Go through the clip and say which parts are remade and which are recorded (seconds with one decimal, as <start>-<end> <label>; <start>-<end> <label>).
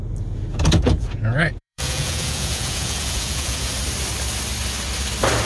0.0-0.5 recorded; 0.5-3.7 remade; 3.7-5.4 recorded